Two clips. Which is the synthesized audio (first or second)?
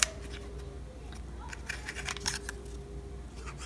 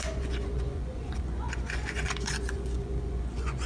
second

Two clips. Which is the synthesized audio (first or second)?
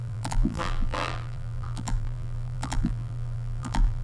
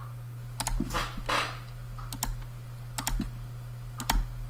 first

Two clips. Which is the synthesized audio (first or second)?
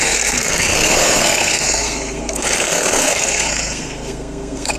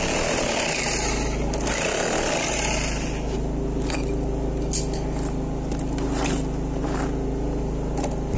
first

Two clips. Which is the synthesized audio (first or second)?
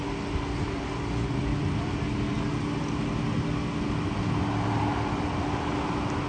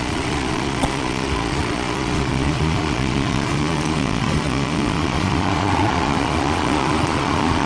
second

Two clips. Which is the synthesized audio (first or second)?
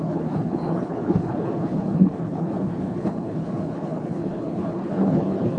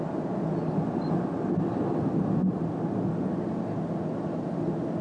first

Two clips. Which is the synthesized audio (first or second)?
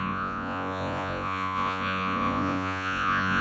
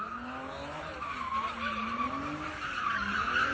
first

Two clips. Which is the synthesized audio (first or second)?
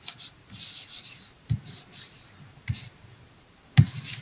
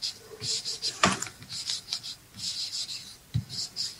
first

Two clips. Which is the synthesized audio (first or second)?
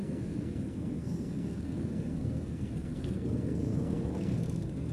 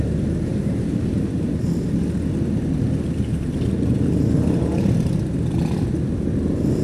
first